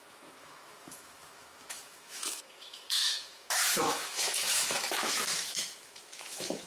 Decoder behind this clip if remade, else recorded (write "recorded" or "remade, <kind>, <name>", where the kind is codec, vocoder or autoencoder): remade, autoencoder, DAC-VAE